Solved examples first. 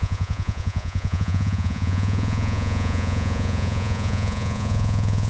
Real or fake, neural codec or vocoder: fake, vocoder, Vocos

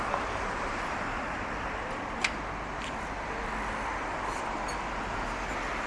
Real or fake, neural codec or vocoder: real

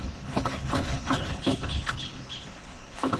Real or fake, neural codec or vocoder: fake, codec, HILCodec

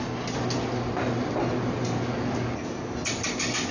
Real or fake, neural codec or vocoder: real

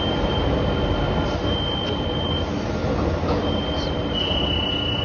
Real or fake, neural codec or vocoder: real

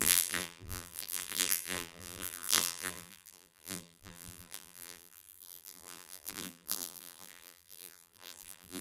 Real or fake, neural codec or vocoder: fake, vocoder, BigVGAN v2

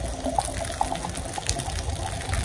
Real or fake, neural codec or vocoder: real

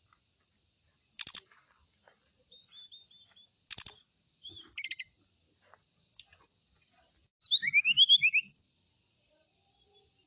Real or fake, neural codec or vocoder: real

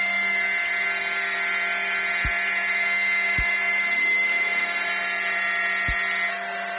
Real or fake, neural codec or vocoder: real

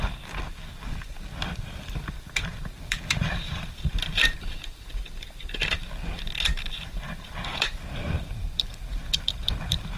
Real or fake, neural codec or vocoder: fake, vocoder, BigVGAN v2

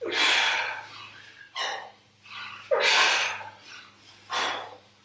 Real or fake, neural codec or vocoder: real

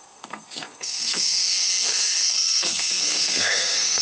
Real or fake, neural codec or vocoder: fake, codec, SNAC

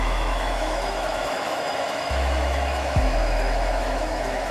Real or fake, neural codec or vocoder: fake, autoencoder, DAC-VAE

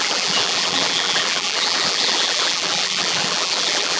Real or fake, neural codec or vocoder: fake, vocoder, BigVGAN v2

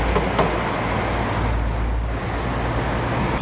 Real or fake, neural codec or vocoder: real